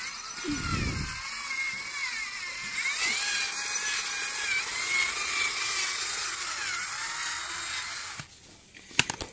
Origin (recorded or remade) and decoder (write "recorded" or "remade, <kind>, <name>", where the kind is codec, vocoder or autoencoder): recorded